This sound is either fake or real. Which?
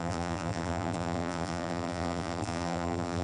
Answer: fake